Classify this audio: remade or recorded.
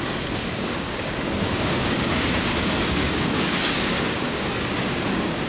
remade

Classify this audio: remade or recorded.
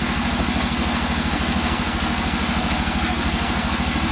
remade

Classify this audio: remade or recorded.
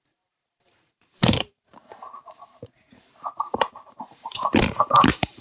remade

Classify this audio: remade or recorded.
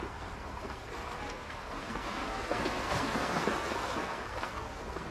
remade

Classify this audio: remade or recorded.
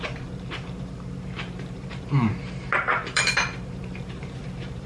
remade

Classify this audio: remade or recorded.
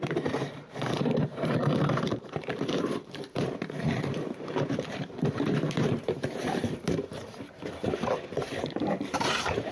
remade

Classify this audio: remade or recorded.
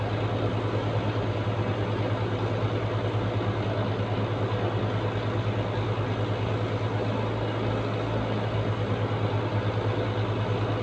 recorded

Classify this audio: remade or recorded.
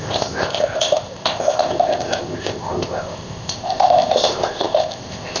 remade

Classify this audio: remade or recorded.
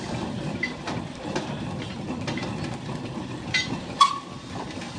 remade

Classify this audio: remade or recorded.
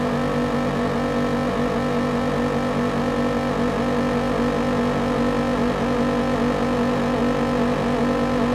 recorded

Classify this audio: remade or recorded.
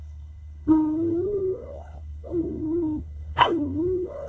remade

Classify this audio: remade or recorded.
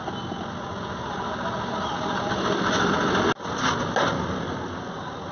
recorded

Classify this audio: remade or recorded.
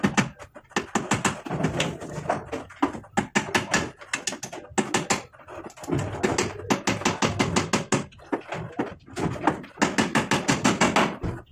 recorded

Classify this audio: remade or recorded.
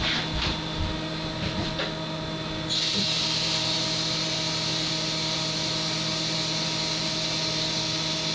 recorded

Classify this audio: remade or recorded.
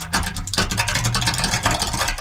recorded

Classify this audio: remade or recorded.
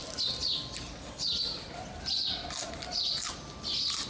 recorded